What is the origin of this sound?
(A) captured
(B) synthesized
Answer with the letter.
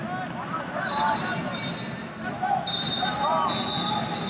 A